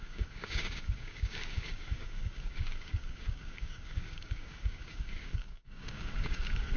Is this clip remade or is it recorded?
remade